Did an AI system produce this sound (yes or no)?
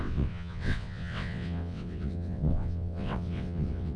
yes